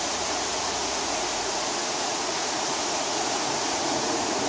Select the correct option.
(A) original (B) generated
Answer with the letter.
B